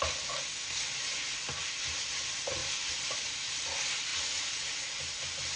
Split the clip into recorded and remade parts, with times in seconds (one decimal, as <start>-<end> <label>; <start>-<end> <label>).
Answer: 0.0-4.1 recorded; 4.1-4.9 remade; 4.9-5.6 recorded